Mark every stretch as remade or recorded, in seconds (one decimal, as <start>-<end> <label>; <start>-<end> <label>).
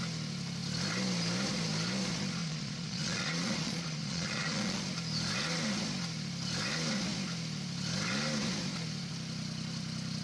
0.0-2.4 recorded; 2.4-4.8 remade; 4.8-10.2 recorded